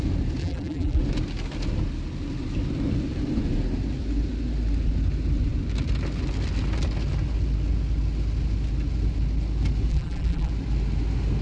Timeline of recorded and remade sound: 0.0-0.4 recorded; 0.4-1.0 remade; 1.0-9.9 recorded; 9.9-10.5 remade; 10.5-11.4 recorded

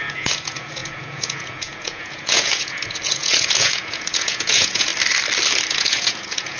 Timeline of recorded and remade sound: 0.0-4.9 remade; 4.9-5.7 recorded; 5.7-6.6 remade

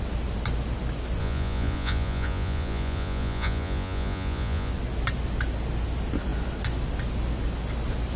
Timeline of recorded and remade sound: 0.0-1.2 recorded; 1.2-4.7 remade; 4.7-8.2 recorded

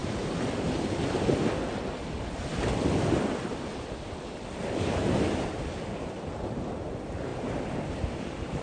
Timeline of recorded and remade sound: 0.0-8.6 recorded

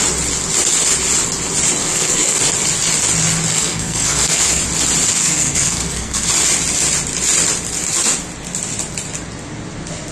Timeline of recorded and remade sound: 0.0-1.8 recorded; 1.8-2.4 remade; 2.4-3.5 recorded; 3.5-4.6 remade; 4.6-5.1 recorded; 5.1-6.3 remade; 6.3-10.1 recorded

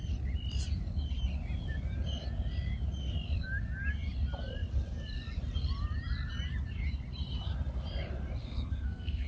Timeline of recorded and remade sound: 0.0-8.4 recorded; 8.4-9.3 remade